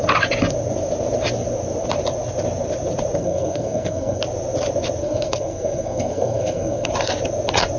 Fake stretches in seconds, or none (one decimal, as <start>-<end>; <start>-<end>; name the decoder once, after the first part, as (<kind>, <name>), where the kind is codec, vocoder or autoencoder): 3.2-4.2 (codec, SNAC); 5.0-6.9